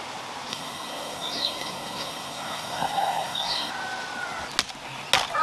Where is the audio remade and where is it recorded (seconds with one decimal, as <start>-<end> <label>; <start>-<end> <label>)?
0.0-0.5 recorded; 0.5-3.7 remade; 3.7-5.4 recorded